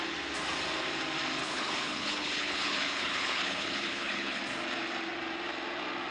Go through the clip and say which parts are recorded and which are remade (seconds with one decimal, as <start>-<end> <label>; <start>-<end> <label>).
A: 0.0-1.4 recorded; 1.4-4.4 remade; 4.4-6.1 recorded

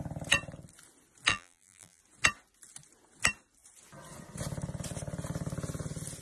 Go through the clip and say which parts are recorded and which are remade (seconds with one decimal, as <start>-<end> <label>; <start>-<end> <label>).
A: 0.0-1.3 recorded; 1.3-2.0 remade; 2.0-6.2 recorded